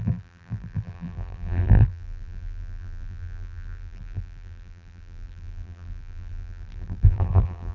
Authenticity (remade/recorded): remade